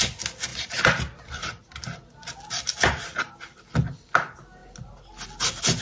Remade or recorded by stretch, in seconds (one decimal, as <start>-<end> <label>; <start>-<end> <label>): 0.0-5.8 recorded